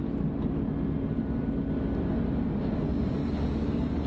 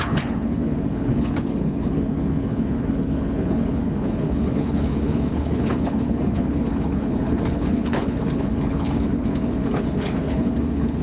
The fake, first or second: second